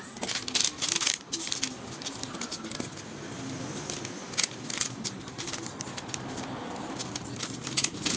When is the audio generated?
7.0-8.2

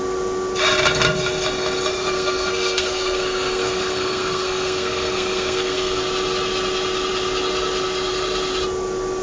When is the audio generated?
1.9-6.0